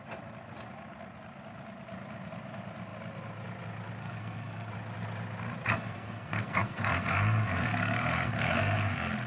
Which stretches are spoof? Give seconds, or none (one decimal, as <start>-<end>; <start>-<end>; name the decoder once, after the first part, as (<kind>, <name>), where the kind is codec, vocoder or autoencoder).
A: 4.0-4.7 (codec, SNAC); 5.7-9.3